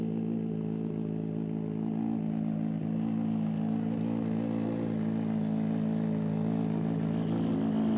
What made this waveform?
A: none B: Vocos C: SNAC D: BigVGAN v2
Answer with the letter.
A